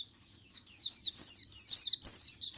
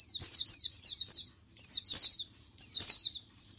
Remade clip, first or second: second